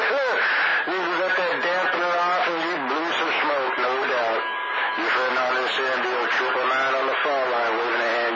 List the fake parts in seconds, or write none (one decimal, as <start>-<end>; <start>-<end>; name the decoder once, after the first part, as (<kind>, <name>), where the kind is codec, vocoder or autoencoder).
none